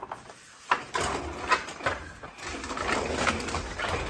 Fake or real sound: real